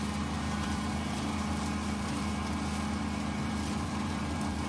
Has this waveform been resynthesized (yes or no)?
yes